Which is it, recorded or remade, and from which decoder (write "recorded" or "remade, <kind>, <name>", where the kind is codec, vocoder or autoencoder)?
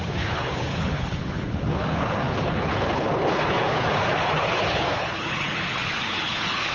remade, codec, HILCodec